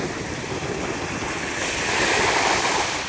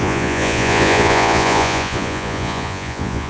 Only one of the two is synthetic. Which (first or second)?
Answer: second